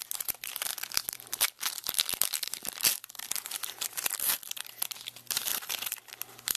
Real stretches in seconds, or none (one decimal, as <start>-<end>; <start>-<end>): 0.0-0.7; 4.7-5.5